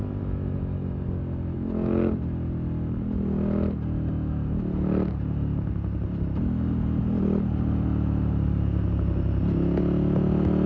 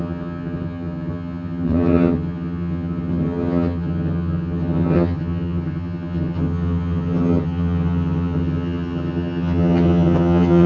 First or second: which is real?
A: first